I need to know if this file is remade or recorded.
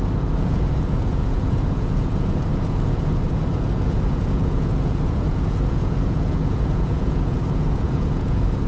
remade